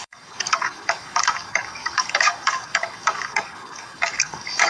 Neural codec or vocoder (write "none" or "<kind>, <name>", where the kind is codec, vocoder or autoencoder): codec, DAC